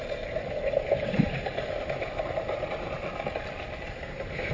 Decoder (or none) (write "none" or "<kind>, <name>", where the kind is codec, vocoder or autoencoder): none